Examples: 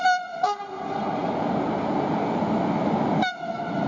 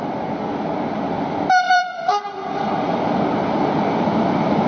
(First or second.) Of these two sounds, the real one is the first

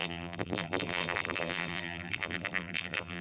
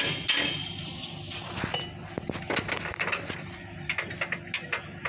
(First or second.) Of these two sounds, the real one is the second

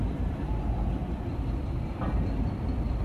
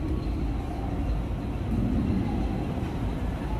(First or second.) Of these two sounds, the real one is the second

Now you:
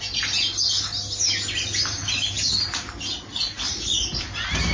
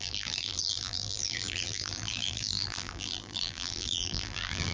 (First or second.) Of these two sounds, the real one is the first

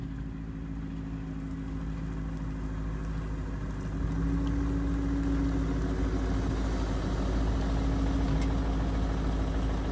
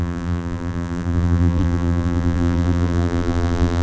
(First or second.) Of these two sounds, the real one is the first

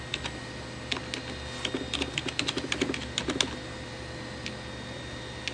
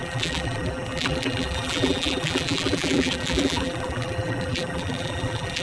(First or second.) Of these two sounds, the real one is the first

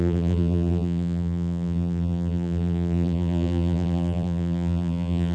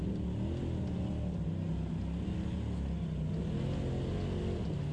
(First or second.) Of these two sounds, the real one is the second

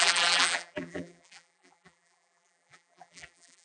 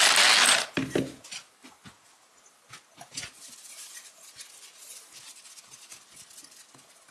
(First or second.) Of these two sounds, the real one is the second